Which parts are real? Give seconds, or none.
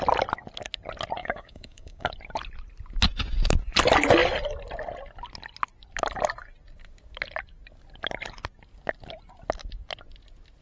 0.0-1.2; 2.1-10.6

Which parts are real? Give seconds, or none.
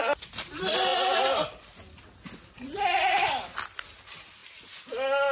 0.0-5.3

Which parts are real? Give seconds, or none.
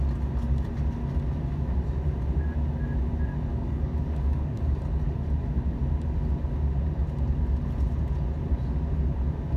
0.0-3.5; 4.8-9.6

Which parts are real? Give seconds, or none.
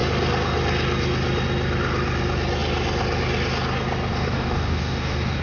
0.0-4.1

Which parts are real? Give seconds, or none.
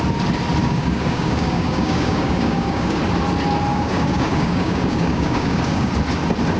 0.0-0.6; 3.0-3.7; 5.9-6.6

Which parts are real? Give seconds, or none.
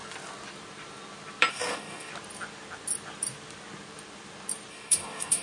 0.0-1.5; 2.1-4.7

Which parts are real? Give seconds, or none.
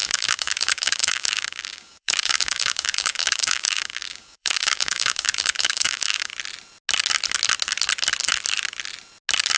6.3-9.6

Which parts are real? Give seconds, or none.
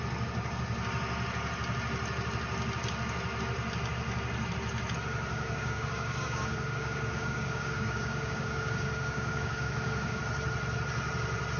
0.0-5.3; 10.2-11.6